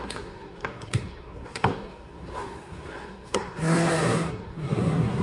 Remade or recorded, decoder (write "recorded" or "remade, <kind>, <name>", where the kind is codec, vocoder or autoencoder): remade, codec, SNAC